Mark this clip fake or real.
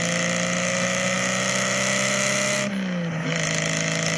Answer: real